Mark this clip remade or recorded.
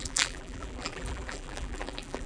remade